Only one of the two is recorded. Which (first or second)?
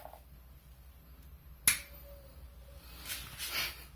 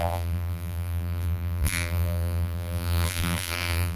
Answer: first